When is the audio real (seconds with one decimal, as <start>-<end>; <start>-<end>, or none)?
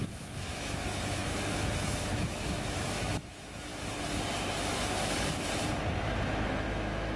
3.7-6.0